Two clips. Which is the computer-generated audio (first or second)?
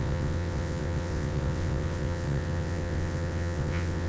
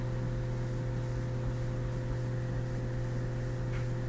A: first